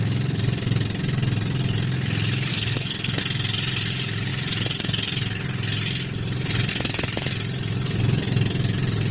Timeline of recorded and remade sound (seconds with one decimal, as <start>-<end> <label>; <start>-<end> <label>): 0.0-2.5 recorded; 2.5-3.2 remade; 3.2-9.1 recorded